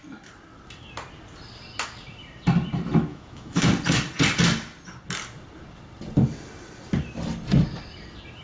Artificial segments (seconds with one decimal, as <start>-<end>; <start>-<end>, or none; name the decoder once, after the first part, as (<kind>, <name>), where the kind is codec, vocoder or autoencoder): 3.1-3.7 (autoencoder, DAC-VAE)

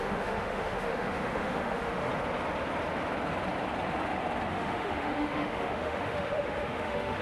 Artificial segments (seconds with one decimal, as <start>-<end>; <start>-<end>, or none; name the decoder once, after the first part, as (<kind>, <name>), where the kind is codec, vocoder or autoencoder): 0.0-2.1 (autoencoder, DAC-VAE); 4.5-7.2